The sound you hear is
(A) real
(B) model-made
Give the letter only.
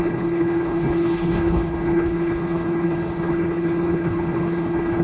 B